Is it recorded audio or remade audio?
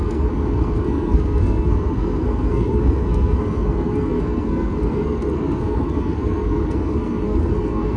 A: remade